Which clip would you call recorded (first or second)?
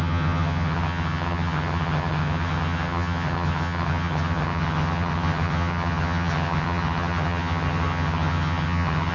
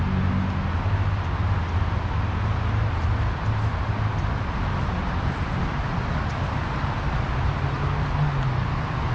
second